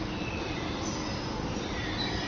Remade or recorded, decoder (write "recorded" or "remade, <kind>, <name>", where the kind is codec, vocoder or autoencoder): recorded